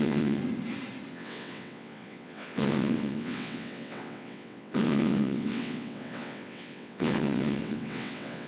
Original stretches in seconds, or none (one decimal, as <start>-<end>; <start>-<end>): 0.4-1.1